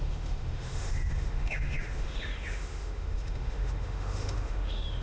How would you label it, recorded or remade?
remade